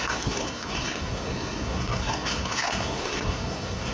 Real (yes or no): no